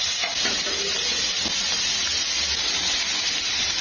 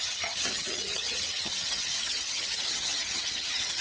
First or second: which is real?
first